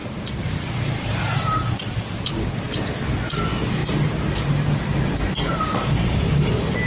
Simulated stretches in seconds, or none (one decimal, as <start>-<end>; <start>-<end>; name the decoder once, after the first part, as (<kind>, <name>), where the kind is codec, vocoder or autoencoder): 0.0-2.3 (vocoder, BigVGAN v2); 3.8-6.5